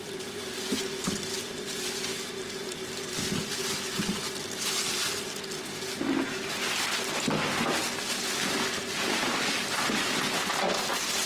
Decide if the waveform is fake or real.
real